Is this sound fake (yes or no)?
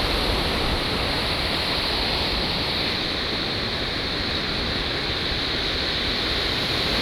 no